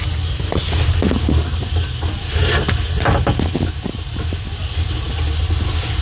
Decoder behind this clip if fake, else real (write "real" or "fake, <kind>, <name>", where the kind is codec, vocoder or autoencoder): real